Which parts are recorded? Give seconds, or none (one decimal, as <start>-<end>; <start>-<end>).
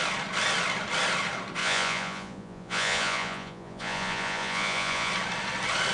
0.0-1.6; 5.1-5.9